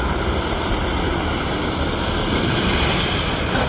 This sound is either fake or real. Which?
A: real